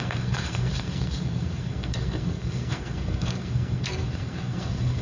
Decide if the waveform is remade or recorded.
remade